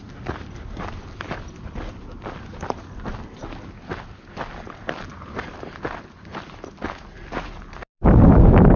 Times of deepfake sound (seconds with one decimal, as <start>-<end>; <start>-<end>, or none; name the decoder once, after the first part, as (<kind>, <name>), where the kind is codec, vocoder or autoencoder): none